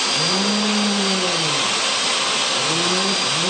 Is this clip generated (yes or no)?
no